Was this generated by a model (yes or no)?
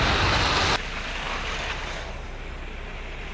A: no